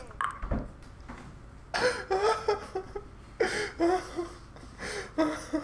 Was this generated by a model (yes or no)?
no